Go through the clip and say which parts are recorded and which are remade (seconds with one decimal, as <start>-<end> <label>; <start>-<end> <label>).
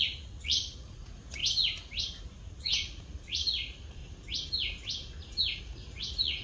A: 0.0-1.4 remade; 1.4-2.6 recorded; 2.6-4.0 remade; 4.0-5.6 recorded; 5.6-6.4 remade